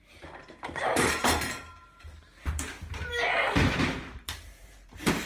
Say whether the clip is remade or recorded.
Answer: remade